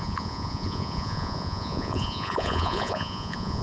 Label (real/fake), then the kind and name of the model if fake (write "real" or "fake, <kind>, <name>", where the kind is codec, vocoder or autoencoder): fake, vocoder, Vocos